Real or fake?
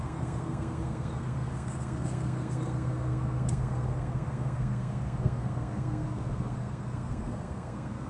fake